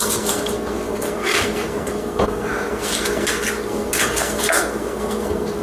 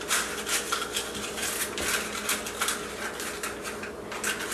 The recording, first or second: second